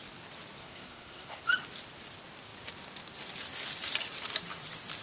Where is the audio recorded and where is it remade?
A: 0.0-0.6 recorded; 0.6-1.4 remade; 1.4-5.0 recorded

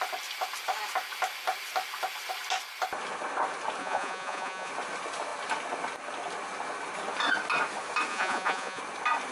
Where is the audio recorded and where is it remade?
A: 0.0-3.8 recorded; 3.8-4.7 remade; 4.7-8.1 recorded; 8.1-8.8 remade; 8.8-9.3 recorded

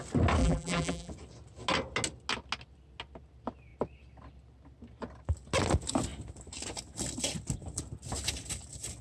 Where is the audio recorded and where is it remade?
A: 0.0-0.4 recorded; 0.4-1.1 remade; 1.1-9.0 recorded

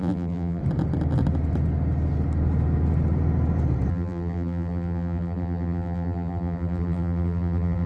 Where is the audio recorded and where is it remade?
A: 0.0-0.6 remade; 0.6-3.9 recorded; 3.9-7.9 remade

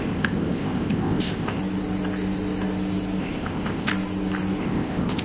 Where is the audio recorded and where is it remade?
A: 0.0-1.6 remade; 1.6-3.2 recorded; 3.2-3.9 remade; 3.9-4.6 recorded; 4.6-5.2 remade

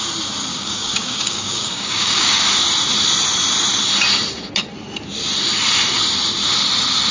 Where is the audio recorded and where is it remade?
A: 0.0-0.5 recorded; 0.5-2.4 remade; 2.4-7.1 recorded